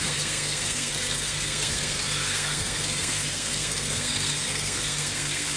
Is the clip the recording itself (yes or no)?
no